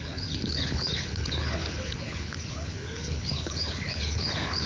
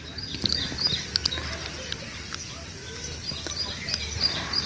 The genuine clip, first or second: second